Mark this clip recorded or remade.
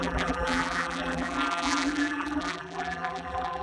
remade